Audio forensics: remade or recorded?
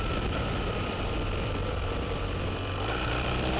remade